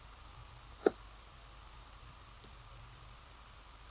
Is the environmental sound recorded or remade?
remade